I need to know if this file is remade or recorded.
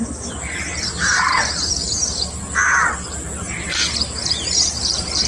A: remade